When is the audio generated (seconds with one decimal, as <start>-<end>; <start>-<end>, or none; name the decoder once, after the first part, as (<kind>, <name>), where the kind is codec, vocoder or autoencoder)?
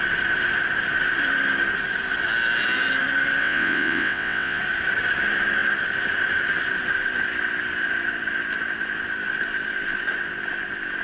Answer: 3.4-4.6 (vocoder, WaveNeXt)